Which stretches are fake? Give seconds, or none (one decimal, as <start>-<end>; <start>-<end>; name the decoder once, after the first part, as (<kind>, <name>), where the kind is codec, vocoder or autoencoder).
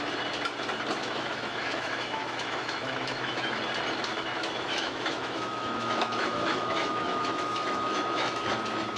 1.0-3.6 (autoencoder, DAC-VAE); 4.1-8.5